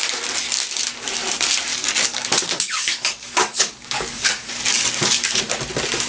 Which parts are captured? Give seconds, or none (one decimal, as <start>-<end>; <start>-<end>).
0.0-1.7; 5.4-6.1